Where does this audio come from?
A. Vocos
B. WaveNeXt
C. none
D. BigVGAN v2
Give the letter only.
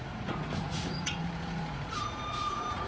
A